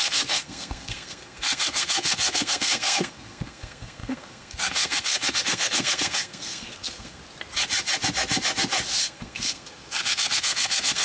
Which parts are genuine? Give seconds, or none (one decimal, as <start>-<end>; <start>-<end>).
7.2-9.0